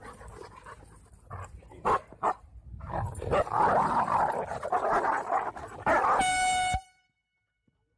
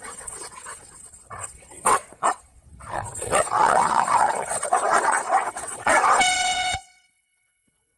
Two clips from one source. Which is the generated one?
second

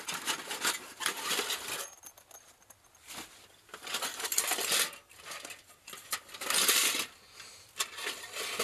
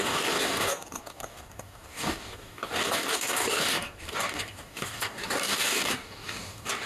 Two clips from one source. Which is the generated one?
second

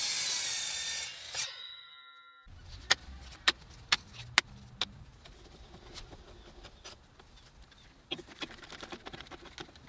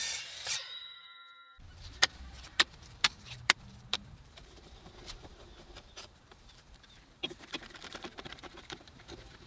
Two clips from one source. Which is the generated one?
second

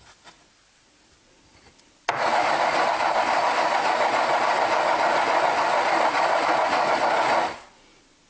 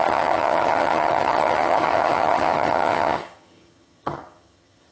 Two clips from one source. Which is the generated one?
second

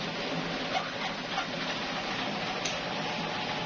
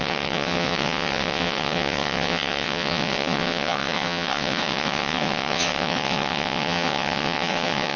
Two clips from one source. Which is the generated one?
second